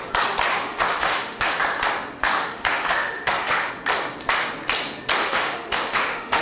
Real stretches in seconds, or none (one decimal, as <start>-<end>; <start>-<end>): 0.0-0.5; 1.6-2.2; 3.7-5.2